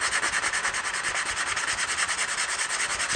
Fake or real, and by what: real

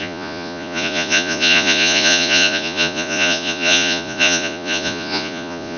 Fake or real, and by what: fake, vocoder, Vocos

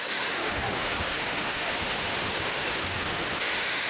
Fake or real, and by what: fake, autoencoder, DAC-VAE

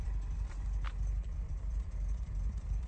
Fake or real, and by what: fake, vocoder, BigVGAN v2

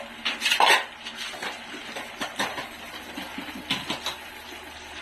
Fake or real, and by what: real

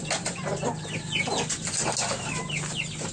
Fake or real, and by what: real